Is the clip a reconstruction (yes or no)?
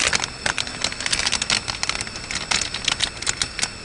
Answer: no